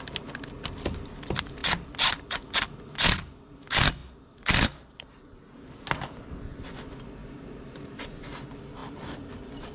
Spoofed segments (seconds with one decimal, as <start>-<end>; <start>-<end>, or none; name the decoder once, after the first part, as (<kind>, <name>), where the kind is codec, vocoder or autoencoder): 4.0-5.7 (vocoder, BigVGAN v2); 7.2-8.0